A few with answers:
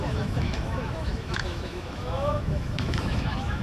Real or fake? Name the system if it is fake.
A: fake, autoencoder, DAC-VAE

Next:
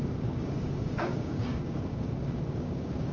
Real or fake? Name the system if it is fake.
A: fake, codec, DAC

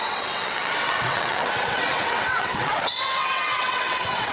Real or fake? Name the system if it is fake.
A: fake, vocoder, WaveNeXt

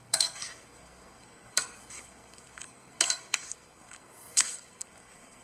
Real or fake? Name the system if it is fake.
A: fake, codec, SNAC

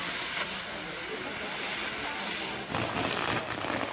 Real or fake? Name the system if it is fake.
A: real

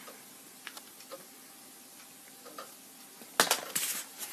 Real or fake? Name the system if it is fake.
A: real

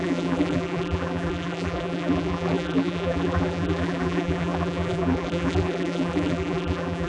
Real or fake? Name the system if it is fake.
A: fake, vocoder, BigVGAN v2